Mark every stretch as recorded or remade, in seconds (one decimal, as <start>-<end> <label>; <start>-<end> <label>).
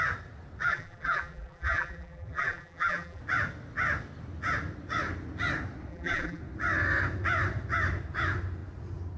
0.0-0.7 recorded; 0.7-3.2 remade; 3.2-5.9 recorded; 5.9-6.4 remade; 6.4-9.2 recorded